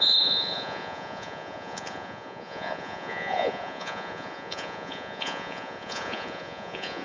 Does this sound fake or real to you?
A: fake